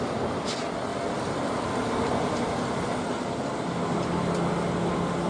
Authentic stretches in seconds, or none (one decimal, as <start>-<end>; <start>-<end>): 0.0-5.3